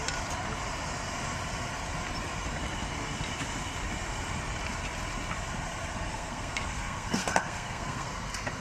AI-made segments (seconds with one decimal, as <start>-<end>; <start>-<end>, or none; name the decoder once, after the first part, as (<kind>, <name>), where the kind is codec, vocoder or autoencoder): 6.1-8.1 (codec, SNAC)